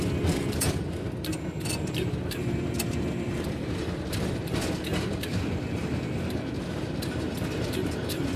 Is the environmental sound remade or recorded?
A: remade